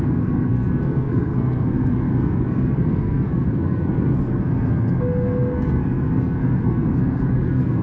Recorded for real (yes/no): no